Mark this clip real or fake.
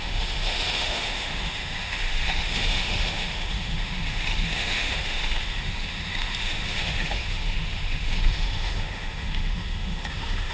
fake